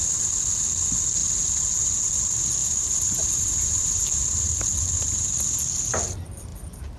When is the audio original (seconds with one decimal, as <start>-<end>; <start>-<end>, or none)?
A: 0.0-2.6; 4.2-7.0